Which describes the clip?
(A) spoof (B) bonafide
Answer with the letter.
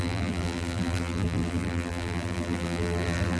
A